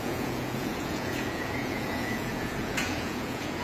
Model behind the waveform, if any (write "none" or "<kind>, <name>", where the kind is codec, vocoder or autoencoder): vocoder, Vocos